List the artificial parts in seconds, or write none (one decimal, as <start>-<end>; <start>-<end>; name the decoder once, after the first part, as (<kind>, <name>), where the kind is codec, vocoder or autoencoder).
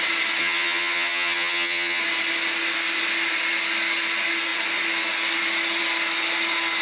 0.4-2.0 (vocoder, HiFi-GAN)